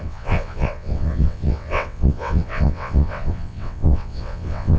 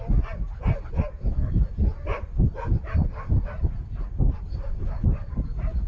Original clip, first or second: second